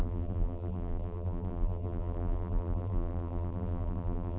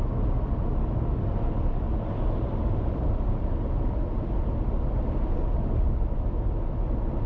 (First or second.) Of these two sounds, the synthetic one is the first